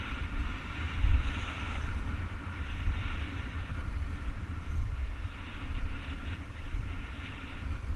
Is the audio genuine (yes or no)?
no